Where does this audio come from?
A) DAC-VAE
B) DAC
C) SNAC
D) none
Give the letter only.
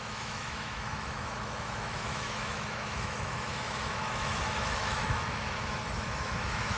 A